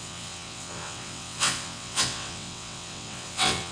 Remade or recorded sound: remade